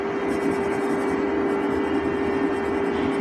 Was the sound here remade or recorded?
recorded